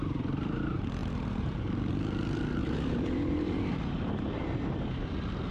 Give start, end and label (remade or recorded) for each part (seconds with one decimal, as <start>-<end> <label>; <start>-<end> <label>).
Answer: 0.0-1.0 recorded; 1.0-1.6 remade; 1.6-2.6 recorded; 2.6-4.7 remade; 4.7-5.5 recorded